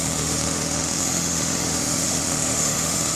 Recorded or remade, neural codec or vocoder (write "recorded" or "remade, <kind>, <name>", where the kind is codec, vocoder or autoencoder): remade, autoencoder, DAC-VAE